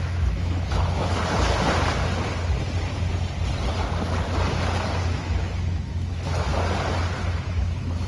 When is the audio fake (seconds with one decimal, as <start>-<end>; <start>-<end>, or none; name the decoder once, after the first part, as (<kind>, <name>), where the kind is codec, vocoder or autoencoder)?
0.0-1.2 (autoencoder, DAC-VAE); 5.2-6.5; 7.3-8.1